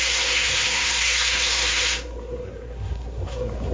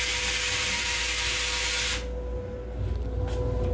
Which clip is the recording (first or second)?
second